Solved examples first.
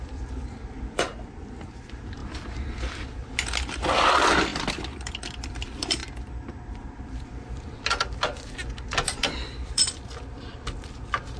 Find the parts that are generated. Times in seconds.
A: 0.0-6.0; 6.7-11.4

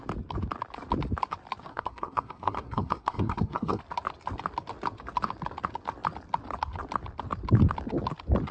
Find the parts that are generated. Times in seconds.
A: 1.7-3.8